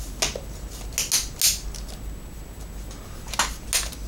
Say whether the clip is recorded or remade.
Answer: recorded